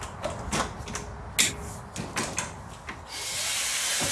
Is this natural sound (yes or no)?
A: yes